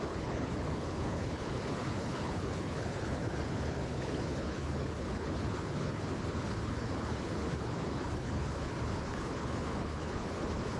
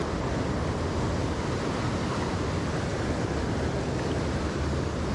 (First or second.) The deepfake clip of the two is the first